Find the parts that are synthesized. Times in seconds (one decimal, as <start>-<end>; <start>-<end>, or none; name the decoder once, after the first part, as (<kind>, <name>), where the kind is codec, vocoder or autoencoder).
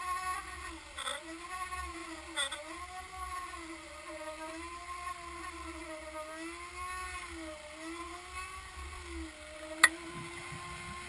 none